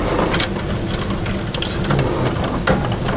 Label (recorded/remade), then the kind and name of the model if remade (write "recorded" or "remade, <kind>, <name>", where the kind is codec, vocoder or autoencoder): recorded